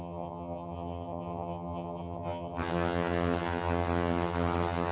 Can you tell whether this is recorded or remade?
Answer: remade